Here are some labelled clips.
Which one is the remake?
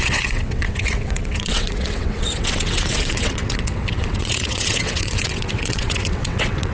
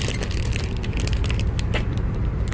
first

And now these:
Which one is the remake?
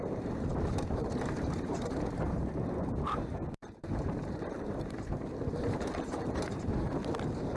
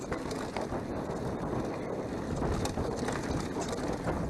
first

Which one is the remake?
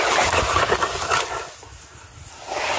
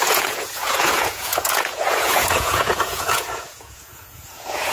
second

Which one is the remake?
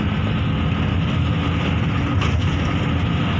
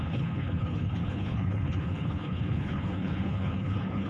second